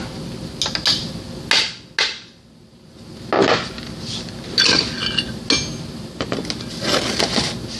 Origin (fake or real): real